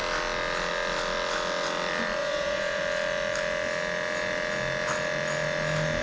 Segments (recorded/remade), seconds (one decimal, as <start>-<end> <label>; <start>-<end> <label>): 0.0-2.2 recorded; 2.2-2.8 remade; 2.8-6.0 recorded